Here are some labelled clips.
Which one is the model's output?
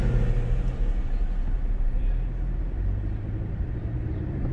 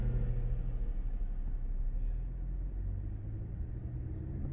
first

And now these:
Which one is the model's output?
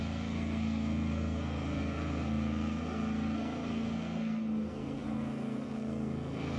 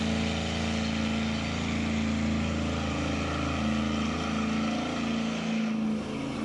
first